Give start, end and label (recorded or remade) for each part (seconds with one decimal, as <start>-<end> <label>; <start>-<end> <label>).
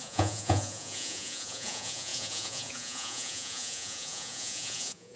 0.0-5.2 remade